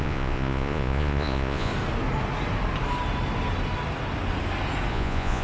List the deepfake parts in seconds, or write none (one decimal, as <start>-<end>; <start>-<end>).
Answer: 0.0-1.7; 4.9-5.4